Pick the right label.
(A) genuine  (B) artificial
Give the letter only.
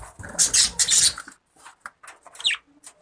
A